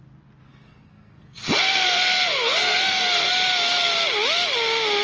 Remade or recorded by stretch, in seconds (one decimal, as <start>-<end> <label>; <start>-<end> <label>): 0.0-0.5 recorded; 0.5-3.3 remade; 3.3-5.0 recorded